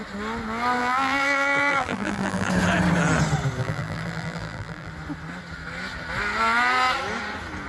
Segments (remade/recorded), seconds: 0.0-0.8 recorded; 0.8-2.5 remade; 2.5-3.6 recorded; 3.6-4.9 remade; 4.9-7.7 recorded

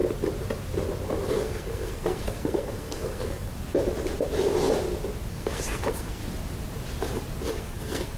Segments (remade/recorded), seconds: 0.0-1.3 recorded; 1.3-3.5 remade; 3.5-5.3 recorded; 5.3-6.2 remade; 6.2-7.5 recorded; 7.5-8.2 remade

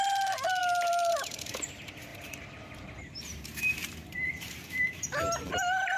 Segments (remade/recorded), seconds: 0.0-0.6 remade; 0.6-1.1 recorded; 1.1-6.0 remade

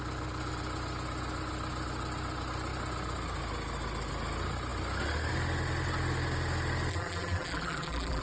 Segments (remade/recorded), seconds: 0.0-6.9 recorded; 6.9-8.2 remade